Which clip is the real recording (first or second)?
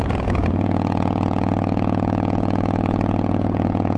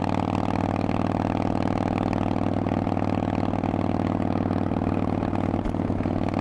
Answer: second